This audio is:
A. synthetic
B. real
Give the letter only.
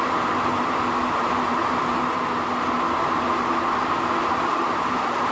B